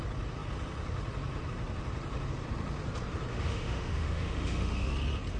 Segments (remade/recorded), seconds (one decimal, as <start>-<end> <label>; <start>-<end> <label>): 0.0-3.3 recorded; 3.3-4.9 remade; 4.9-5.4 recorded